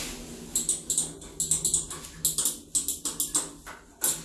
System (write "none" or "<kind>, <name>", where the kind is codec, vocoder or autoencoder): none